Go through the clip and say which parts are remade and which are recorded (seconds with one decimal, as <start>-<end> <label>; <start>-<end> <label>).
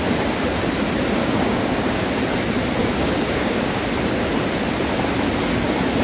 0.0-1.2 recorded; 1.2-2.1 remade; 2.1-2.8 recorded; 2.8-3.8 remade; 3.8-6.0 recorded